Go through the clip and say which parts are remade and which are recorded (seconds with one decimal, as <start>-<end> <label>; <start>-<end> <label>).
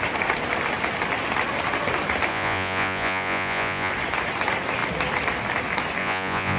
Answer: 0.0-2.3 recorded; 2.3-3.9 remade; 3.9-6.0 recorded; 6.0-6.6 remade